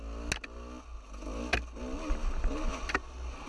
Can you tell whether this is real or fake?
real